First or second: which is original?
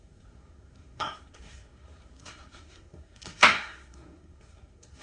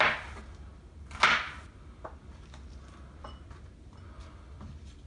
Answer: second